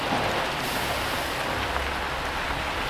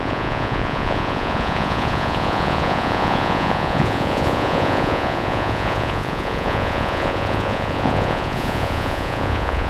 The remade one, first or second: second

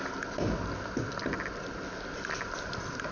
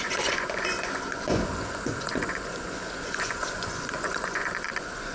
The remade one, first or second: second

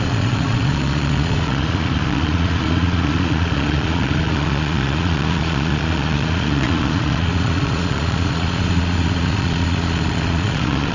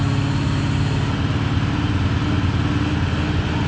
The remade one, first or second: first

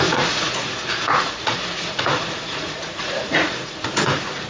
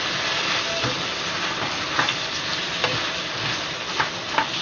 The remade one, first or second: first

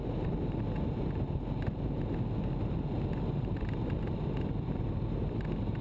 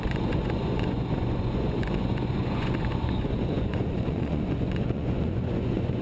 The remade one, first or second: second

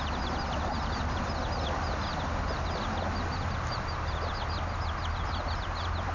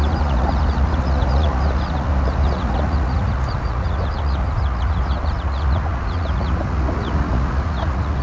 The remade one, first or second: second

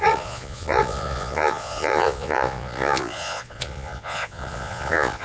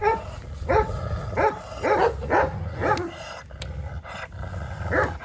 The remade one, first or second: first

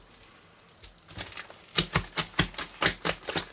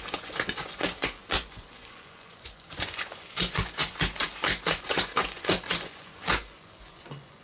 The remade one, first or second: second